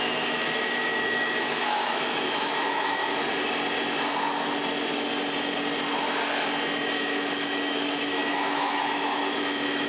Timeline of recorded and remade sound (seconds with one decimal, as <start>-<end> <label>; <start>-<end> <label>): 0.0-3.0 remade; 3.0-7.1 recorded; 7.1-9.9 remade